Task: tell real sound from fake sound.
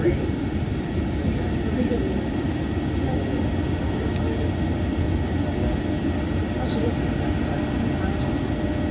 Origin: real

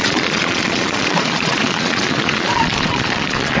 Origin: fake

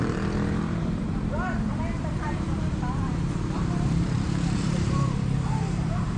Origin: fake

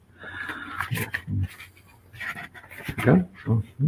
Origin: real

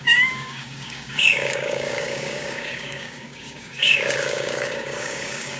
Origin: fake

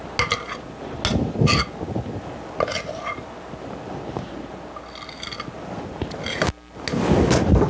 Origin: real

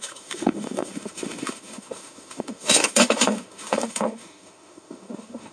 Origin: fake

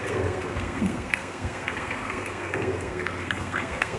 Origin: fake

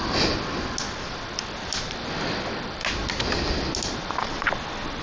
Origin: real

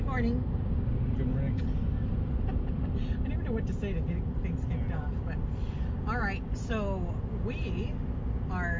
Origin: real